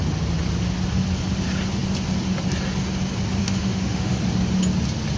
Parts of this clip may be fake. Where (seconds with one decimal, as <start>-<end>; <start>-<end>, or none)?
3.4-4.2

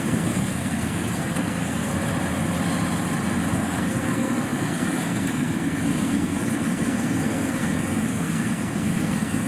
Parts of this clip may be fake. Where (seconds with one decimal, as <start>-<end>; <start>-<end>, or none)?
0.0-1.9; 3.5-9.5

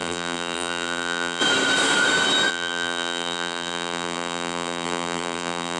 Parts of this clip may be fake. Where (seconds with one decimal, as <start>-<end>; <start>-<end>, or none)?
0.0-1.4; 2.5-5.8

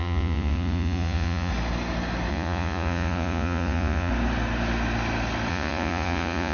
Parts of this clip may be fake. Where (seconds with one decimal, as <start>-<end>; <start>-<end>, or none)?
0.0-1.5; 2.3-4.1; 5.5-6.5

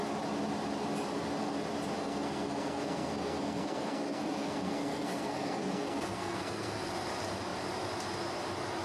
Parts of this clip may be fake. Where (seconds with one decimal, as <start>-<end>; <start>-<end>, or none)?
2.0-6.9

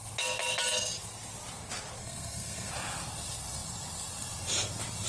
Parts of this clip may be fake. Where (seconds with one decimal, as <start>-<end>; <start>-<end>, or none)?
2.0-2.7